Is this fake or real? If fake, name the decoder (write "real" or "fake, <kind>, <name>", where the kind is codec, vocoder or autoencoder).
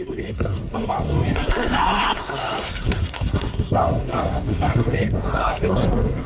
fake, codec, SNAC